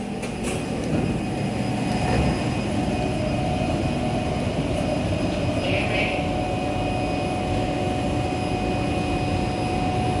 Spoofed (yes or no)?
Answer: no